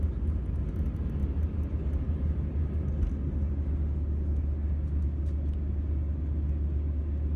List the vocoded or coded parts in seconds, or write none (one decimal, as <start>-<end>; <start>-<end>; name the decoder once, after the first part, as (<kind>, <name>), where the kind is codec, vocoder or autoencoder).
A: none